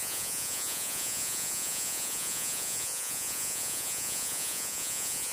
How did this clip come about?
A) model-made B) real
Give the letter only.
A